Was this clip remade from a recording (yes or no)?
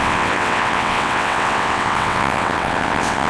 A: yes